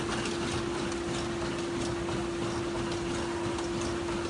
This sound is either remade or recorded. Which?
recorded